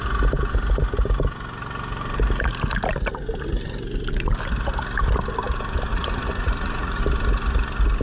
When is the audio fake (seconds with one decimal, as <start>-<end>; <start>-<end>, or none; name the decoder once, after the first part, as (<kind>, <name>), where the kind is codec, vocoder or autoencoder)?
5.9-7.0 (vocoder, Vocos)